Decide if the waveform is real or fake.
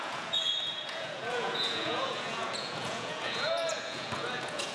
fake